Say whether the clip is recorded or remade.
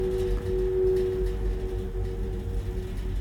recorded